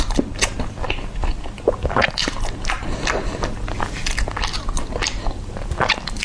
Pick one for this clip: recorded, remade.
recorded